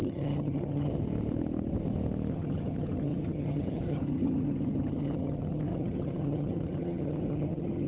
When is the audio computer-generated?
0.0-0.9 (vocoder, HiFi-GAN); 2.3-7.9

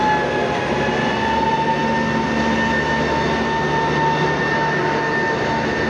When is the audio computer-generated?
none